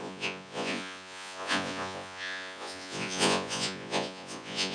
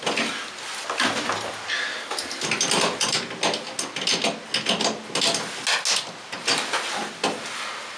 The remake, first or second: first